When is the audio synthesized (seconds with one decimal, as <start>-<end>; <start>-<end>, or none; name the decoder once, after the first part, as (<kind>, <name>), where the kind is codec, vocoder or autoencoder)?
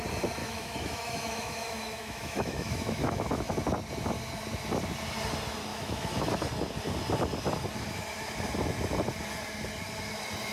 0.4-3.4 (autoencoder, DAC-VAE); 5.7-6.3